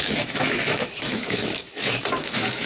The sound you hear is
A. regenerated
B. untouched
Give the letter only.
A